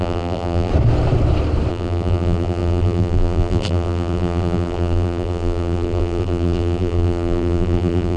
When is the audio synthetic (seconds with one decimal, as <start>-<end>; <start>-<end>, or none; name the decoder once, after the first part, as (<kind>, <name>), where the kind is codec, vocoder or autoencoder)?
0.0-0.7 (vocoder, BigVGAN v2); 1.7-8.2